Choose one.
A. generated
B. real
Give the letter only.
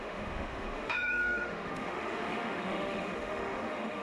A